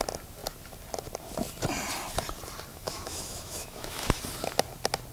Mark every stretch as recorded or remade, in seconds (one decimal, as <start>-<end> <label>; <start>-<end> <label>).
0.0-2.7 recorded; 2.7-4.2 remade; 4.2-5.1 recorded